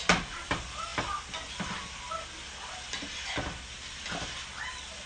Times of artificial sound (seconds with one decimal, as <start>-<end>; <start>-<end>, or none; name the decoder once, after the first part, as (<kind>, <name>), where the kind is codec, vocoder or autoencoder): none